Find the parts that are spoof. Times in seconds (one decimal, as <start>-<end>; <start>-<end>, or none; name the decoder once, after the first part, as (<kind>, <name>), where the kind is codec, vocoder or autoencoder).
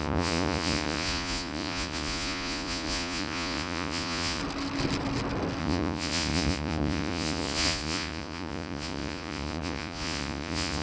0.0-4.4 (vocoder, Vocos); 5.6-10.8